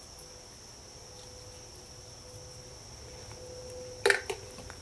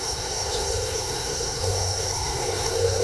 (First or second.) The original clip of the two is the first